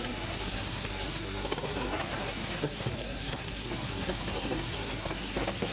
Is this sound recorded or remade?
remade